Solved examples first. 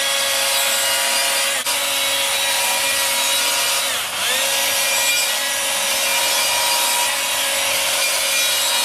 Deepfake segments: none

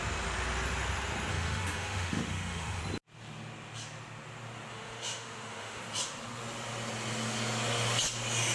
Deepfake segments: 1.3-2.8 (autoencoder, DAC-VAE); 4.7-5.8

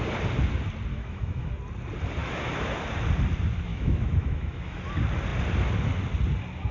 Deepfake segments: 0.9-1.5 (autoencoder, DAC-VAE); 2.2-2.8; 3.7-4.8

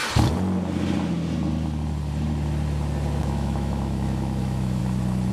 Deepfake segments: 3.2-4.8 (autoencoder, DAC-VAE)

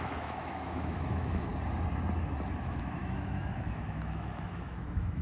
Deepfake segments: 0.0-1.5 (autoencoder, DAC-VAE); 2.6-5.2